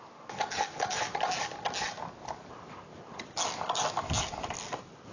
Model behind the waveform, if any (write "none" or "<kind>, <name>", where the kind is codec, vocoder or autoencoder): none